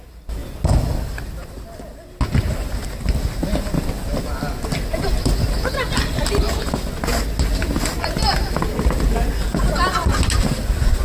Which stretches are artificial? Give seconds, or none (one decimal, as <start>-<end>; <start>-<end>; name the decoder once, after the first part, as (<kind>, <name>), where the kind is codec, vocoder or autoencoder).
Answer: none